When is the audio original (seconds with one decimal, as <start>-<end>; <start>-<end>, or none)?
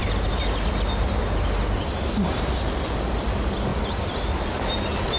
0.0-5.2